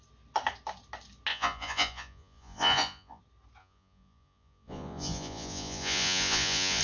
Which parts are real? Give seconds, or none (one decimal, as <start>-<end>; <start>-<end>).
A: 0.0-1.3; 3.2-3.6